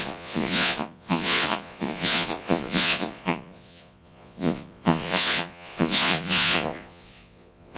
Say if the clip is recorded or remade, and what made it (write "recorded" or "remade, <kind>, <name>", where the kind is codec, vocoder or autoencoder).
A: remade, vocoder, Vocos